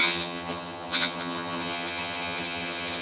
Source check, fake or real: fake